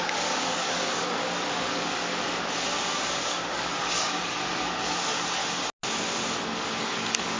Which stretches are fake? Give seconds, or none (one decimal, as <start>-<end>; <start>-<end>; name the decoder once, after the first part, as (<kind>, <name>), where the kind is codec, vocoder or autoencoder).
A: 0.0-2.1 (codec, DAC); 3.2-5.4; 6.8-7.4